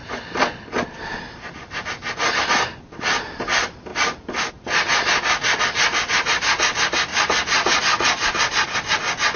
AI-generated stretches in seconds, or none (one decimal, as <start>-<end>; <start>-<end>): 7.1-7.8